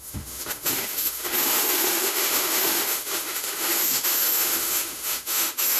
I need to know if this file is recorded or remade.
remade